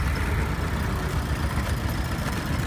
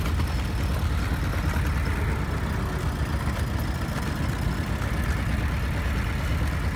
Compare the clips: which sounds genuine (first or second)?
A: second